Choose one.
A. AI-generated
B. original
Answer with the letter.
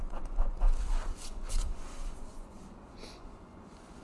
A